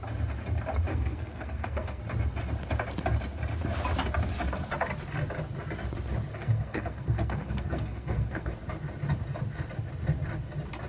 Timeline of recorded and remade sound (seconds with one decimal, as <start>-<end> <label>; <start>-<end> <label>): 0.0-0.9 recorded; 0.9-2.0 remade; 2.0-6.3 recorded; 6.3-8.5 remade; 8.5-10.9 recorded

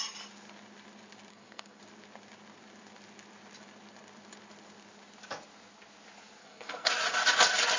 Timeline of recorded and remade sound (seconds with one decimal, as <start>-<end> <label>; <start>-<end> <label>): 0.0-1.3 recorded; 1.3-1.8 remade; 1.8-6.4 recorded; 6.4-6.9 remade; 6.9-7.8 recorded

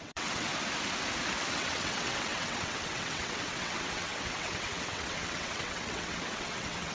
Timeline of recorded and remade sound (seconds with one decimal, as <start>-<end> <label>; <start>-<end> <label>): 0.0-0.5 remade; 0.5-1.5 recorded; 1.5-6.9 remade

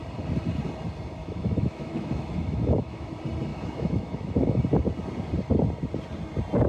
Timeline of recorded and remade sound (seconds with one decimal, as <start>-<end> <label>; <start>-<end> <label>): 0.0-1.2 recorded; 1.2-3.1 remade; 3.1-3.5 recorded; 3.5-4.6 remade; 4.6-6.7 recorded

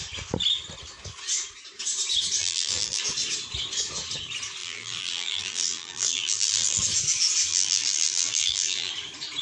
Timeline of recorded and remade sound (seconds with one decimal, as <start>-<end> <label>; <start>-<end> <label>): 0.0-2.4 recorded; 2.4-3.0 remade; 3.0-4.6 recorded; 4.6-6.8 remade; 6.8-7.5 recorded; 7.5-8.9 remade; 8.9-9.4 recorded

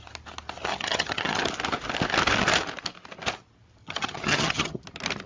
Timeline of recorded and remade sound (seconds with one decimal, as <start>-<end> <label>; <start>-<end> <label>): 0.0-0.7 recorded; 0.7-1.4 remade; 1.4-3.8 recorded; 3.8-4.8 remade; 4.8-5.3 recorded

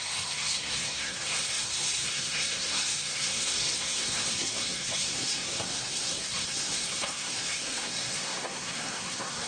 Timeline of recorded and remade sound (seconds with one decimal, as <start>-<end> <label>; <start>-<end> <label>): 0.0-9.5 remade

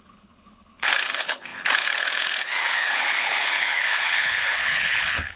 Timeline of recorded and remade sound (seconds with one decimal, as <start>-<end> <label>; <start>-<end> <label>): 0.0-5.4 remade